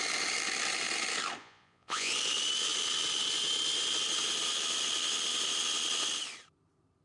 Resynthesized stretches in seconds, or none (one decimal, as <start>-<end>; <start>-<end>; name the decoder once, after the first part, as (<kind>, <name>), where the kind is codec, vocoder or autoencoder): 1.4-2.1 (vocoder, Vocos)